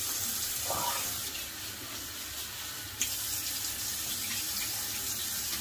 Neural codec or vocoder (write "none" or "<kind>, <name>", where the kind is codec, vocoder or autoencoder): vocoder, BigVGAN v2